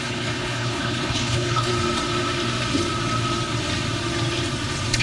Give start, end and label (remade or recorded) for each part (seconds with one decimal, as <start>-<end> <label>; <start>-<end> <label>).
0.0-1.7 remade; 1.7-5.0 recorded